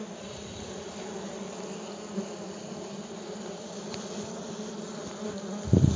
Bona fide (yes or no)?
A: yes